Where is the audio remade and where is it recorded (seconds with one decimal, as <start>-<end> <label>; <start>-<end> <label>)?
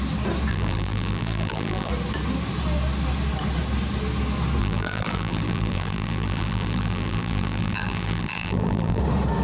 0.0-0.5 recorded; 0.5-1.9 remade; 1.9-4.6 recorded; 4.6-9.0 remade; 9.0-9.4 recorded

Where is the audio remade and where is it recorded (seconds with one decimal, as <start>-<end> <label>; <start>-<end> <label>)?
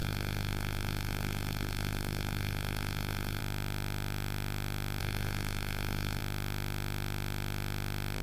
0.0-3.4 remade; 3.4-5.0 recorded; 5.0-6.2 remade; 6.2-8.2 recorded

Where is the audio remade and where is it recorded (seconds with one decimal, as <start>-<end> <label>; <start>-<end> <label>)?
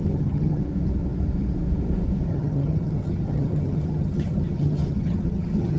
0.0-0.6 remade; 0.6-2.3 recorded; 2.3-5.8 remade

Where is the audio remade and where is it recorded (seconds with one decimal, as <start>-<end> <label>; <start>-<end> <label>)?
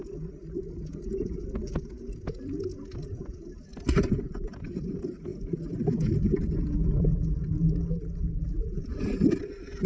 0.0-9.9 recorded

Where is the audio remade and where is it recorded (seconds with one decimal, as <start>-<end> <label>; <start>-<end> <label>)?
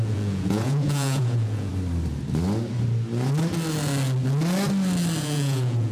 0.0-1.7 remade; 1.7-5.2 recorded; 5.2-5.9 remade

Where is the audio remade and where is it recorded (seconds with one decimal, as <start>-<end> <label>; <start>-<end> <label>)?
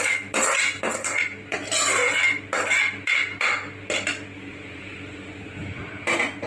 0.0-4.5 recorded; 4.5-5.8 remade; 5.8-6.5 recorded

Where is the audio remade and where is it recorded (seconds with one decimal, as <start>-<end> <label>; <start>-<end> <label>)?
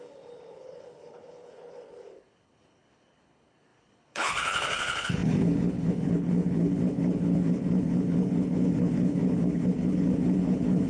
0.0-10.9 remade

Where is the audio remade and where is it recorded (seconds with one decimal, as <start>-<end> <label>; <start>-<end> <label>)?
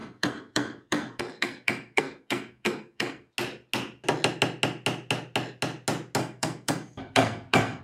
0.0-3.3 remade; 3.3-6.2 recorded; 6.2-7.8 remade